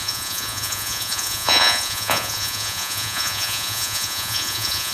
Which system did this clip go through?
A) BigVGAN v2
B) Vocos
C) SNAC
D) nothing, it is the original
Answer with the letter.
B